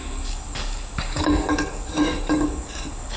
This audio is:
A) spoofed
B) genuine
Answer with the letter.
A